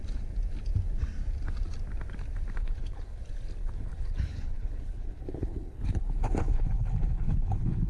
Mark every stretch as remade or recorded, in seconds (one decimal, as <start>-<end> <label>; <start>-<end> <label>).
0.0-2.6 recorded; 2.6-3.2 remade; 3.2-3.6 recorded; 3.6-7.9 remade